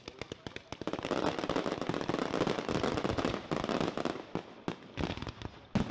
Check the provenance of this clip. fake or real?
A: real